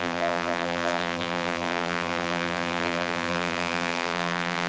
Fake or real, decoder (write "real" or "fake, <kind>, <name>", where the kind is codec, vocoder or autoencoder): fake, vocoder, BigVGAN v2